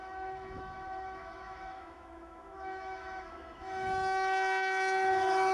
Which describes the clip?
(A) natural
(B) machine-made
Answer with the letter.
B